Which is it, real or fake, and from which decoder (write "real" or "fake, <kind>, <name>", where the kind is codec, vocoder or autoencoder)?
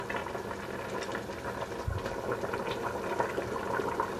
real